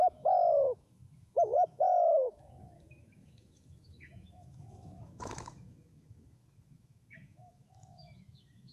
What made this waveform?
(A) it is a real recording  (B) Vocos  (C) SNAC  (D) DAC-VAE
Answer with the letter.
D